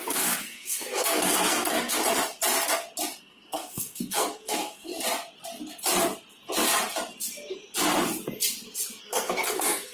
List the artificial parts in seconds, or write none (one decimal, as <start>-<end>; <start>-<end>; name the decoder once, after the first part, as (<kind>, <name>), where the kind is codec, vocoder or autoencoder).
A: 0.0-2.0 (codec, SNAC); 3.2-4.9; 9.0-9.9